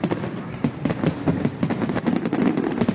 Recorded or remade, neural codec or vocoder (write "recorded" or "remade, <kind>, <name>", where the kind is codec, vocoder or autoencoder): recorded